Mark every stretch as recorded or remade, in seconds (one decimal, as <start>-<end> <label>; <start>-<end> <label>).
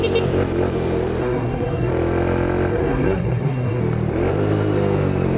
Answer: 0.0-1.2 recorded; 1.2-1.9 remade; 1.9-2.7 recorded; 2.7-3.8 remade; 3.8-5.4 recorded